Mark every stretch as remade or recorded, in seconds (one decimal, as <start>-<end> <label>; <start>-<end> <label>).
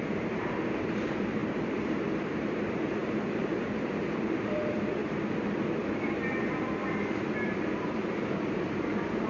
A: 0.0-5.0 remade; 5.0-7.4 recorded; 7.4-9.3 remade